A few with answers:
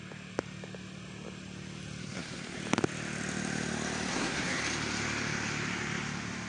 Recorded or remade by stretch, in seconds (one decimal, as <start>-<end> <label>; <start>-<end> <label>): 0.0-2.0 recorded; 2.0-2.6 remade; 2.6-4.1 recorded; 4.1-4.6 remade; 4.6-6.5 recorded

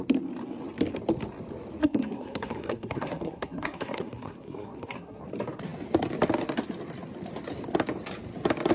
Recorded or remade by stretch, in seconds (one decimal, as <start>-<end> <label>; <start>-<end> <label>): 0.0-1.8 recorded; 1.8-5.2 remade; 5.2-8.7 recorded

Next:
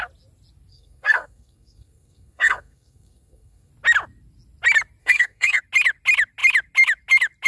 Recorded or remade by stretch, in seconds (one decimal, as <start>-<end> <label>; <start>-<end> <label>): 0.0-0.7 recorded; 0.7-3.7 remade; 3.7-5.0 recorded; 5.0-5.6 remade; 5.6-7.5 recorded

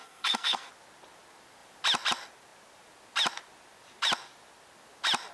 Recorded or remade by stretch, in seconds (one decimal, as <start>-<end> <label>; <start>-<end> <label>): 0.0-0.7 remade; 0.7-5.3 recorded